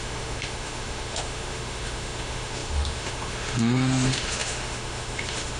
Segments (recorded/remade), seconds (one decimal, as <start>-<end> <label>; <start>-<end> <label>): 0.0-5.6 remade